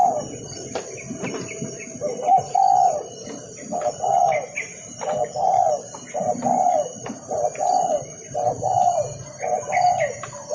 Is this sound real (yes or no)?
yes